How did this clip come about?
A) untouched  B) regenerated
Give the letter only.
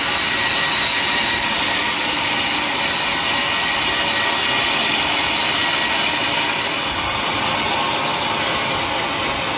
A